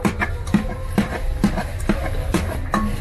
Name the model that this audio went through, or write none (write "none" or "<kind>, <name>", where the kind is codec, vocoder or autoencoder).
none